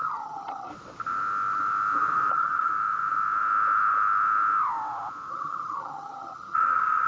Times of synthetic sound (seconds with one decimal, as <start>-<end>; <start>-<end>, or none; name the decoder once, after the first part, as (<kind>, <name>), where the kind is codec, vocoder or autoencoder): 0.0-0.7 (vocoder, HiFi-GAN); 2.3-2.7; 5.3-7.1